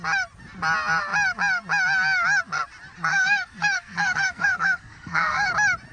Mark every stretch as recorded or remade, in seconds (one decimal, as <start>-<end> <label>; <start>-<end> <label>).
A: 0.0-3.1 recorded; 3.1-5.5 remade; 5.5-5.9 recorded